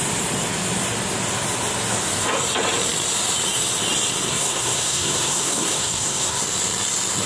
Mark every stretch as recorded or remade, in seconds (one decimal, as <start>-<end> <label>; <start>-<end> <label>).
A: 0.0-4.3 recorded; 4.3-6.4 remade; 6.4-7.3 recorded